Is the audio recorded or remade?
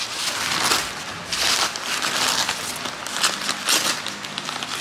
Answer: recorded